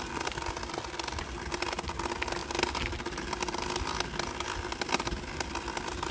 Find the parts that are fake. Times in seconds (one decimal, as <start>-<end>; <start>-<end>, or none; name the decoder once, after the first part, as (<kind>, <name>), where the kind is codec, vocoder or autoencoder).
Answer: none